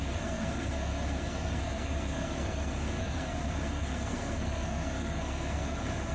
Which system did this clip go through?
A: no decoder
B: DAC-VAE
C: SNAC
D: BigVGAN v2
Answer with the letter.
C